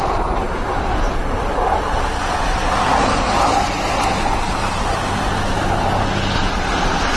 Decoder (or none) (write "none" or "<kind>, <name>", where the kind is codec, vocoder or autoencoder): none